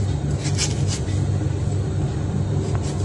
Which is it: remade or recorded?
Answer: recorded